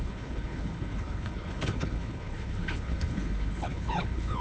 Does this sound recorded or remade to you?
remade